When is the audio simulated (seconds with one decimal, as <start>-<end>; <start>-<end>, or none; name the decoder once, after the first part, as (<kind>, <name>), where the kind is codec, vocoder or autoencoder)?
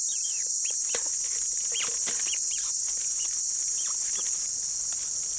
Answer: none